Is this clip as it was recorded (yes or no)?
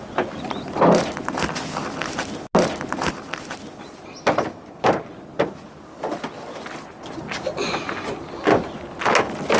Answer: yes